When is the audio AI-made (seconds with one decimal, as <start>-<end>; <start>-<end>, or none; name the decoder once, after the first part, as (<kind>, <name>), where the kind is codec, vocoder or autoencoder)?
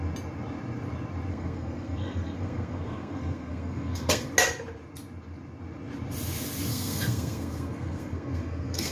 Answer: 1.3-4.3 (codec, SNAC); 6.7-8.9